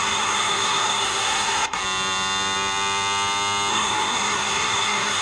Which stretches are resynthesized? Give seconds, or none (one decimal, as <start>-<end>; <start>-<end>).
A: 0.0-1.8; 3.7-5.2